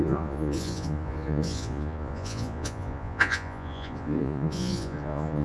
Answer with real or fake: fake